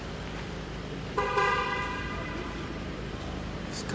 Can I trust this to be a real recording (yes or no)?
no